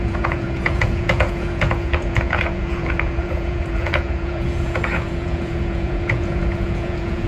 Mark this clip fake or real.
fake